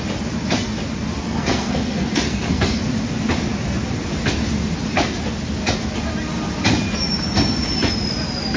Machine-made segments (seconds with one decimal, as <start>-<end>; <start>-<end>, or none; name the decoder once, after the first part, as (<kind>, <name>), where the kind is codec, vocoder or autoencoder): 1.2-2.8 (codec, SNAC)